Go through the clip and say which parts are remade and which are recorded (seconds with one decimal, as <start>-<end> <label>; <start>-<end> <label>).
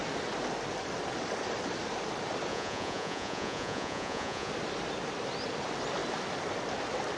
0.0-2.5 recorded; 2.5-4.5 remade; 4.5-7.2 recorded